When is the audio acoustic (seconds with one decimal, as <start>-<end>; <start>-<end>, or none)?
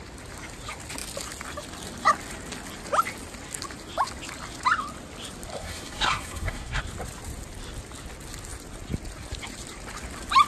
0.0-5.5; 6.8-10.5